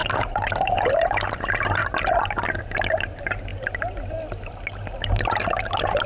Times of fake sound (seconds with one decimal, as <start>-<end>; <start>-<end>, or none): 0.0-1.3